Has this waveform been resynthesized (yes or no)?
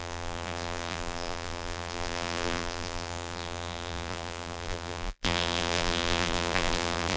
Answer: yes